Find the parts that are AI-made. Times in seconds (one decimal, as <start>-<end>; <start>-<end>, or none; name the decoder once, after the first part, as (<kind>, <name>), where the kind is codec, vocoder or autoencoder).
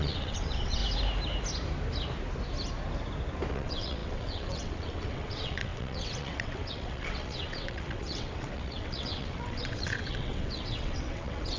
0.0-0.8 (vocoder, WaveNeXt); 3.5-11.6